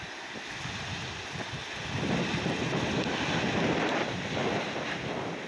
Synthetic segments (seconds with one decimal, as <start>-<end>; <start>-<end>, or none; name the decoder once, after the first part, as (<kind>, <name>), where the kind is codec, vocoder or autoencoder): 0.0-5.5 (vocoder, BigVGAN v2)